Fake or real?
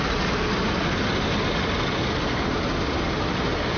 real